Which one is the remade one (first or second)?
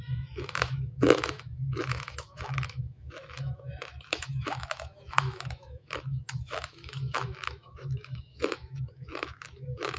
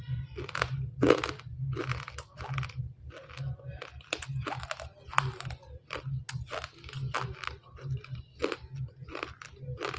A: first